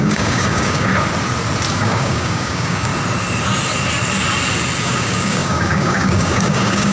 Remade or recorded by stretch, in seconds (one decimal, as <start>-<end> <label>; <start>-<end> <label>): 0.0-0.9 remade; 0.9-1.7 recorded; 1.7-2.9 remade; 2.9-4.8 recorded; 4.8-6.9 remade